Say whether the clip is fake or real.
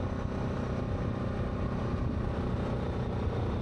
real